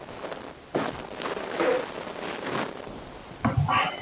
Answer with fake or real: real